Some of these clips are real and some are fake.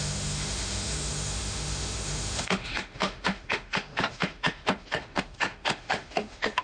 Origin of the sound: fake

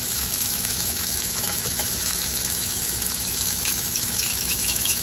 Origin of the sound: fake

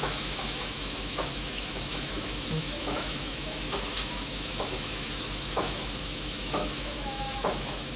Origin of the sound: fake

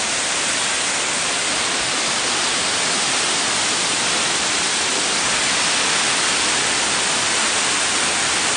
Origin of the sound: real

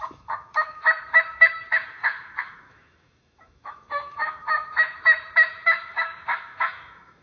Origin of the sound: fake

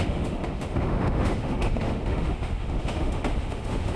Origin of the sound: fake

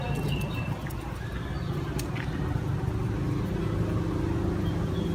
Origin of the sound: real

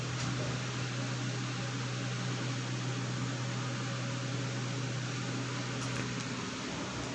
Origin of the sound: real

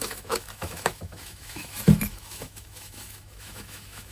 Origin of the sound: fake